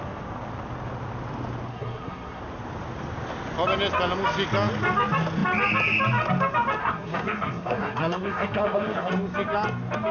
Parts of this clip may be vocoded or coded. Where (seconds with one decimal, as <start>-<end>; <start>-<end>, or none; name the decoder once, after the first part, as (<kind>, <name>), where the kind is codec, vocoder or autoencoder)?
1.7-2.4 (codec, SNAC); 6.8-9.1